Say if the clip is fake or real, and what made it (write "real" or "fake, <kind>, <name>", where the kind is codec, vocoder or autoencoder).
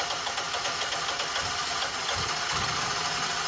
real